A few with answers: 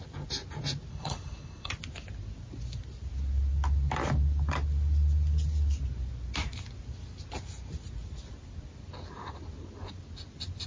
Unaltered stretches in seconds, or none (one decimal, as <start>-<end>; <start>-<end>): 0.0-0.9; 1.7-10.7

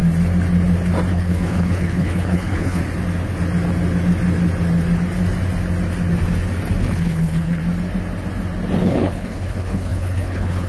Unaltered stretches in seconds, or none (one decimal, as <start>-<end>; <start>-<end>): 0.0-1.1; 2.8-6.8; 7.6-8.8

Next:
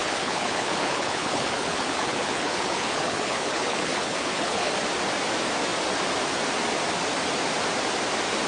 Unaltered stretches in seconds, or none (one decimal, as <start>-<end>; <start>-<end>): 4.7-8.5